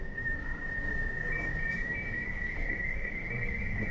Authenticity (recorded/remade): remade